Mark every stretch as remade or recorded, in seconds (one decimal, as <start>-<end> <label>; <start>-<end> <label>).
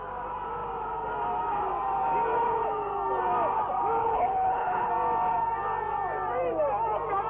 0.0-4.0 recorded; 4.0-4.9 remade; 4.9-7.3 recorded